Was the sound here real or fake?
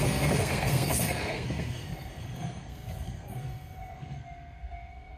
fake